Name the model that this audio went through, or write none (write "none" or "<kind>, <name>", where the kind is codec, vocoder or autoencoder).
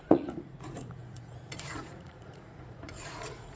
vocoder, Vocos